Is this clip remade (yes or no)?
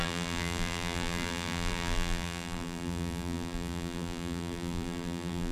yes